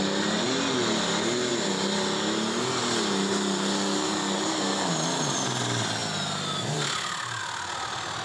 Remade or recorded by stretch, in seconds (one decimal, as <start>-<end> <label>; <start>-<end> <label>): 0.0-8.2 recorded